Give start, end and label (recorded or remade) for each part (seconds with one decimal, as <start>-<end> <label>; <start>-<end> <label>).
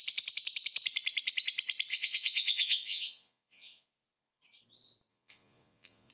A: 0.0-1.9 recorded; 1.9-4.4 remade; 4.4-5.1 recorded; 5.1-6.1 remade